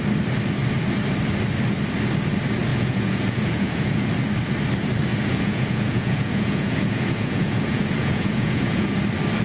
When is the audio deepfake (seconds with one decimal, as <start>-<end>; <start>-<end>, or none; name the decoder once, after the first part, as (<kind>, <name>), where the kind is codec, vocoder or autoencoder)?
2.7-4.1 (vocoder, Vocos); 5.1-9.0